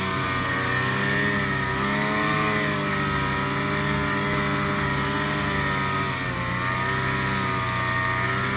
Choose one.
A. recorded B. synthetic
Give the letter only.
A